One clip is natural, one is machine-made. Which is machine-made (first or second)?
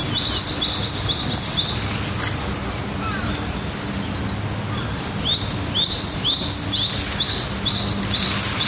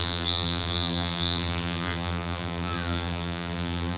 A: second